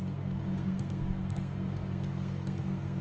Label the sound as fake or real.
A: fake